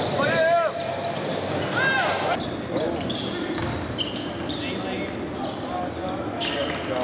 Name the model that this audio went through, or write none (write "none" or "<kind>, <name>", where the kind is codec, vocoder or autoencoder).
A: none